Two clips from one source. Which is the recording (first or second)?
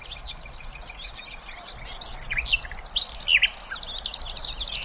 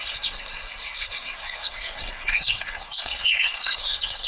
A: first